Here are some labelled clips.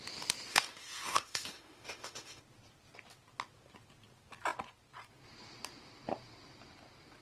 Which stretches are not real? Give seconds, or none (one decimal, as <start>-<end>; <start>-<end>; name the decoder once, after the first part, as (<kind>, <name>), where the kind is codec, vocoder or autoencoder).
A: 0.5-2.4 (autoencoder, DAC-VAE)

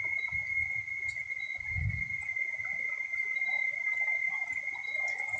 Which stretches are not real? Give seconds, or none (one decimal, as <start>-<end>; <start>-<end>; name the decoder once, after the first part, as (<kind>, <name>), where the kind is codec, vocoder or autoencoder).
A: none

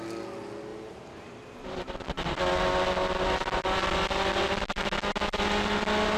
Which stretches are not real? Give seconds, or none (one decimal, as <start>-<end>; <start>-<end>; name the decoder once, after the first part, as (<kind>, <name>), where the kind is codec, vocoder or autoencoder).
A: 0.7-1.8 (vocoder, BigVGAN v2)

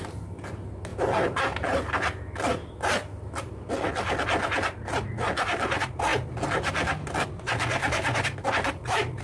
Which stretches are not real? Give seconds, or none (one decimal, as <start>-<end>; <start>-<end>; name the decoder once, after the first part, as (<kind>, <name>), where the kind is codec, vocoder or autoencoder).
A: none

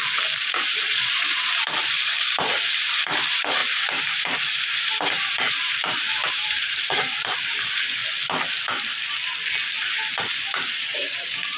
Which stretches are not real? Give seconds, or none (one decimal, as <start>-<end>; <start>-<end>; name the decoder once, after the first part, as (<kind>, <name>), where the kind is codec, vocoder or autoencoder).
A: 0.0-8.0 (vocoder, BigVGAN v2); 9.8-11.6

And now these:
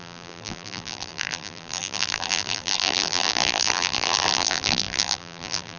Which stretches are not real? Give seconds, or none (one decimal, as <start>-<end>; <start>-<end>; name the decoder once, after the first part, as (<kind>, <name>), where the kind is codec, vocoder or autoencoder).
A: 0.0-5.8 (vocoder, BigVGAN v2)